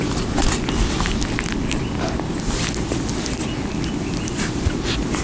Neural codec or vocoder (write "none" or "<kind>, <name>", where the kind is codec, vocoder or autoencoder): none